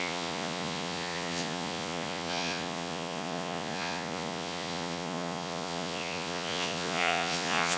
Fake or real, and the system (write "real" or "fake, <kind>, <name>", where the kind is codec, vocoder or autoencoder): fake, vocoder, Vocos